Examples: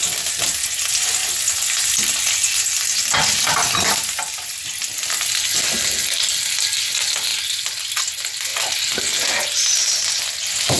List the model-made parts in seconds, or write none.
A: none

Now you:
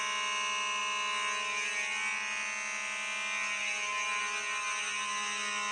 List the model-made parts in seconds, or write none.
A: none

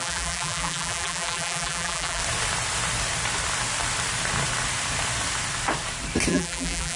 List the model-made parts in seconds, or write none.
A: 0.0-2.2 (vocoder, BigVGAN v2); 6.3-7.0